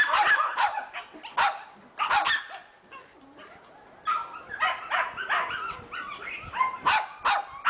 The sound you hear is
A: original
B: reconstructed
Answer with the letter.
A